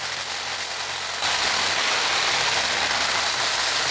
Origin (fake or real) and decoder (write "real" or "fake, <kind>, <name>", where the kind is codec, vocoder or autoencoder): real